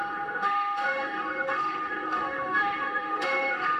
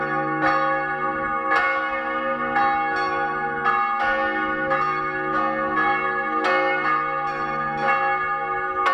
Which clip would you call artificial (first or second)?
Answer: first